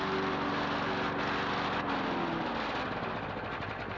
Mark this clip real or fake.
real